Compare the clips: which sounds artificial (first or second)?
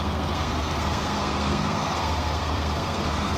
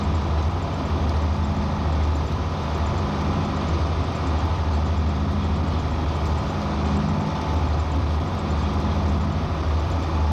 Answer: first